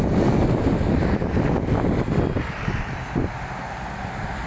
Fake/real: real